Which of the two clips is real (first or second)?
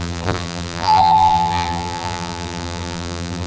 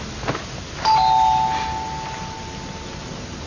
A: second